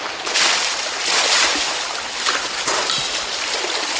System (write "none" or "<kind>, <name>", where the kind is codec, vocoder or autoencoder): none